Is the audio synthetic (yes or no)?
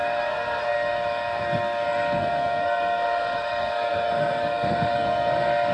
yes